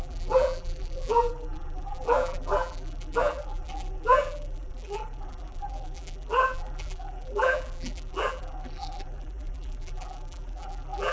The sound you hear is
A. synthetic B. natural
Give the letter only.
A